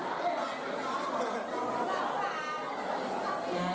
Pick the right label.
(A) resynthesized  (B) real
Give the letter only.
B